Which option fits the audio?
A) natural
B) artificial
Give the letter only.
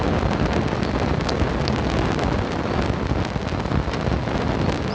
A